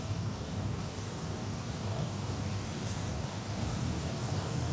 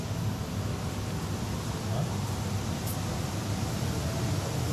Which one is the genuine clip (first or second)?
second